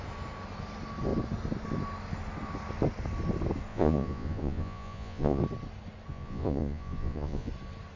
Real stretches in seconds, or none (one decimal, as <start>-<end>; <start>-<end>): 0.0-3.7; 5.4-6.1; 7.5-8.0